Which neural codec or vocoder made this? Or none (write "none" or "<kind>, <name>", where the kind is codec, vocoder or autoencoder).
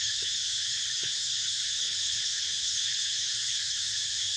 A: codec, HILCodec